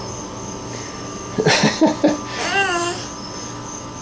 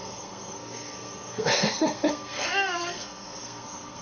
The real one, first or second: first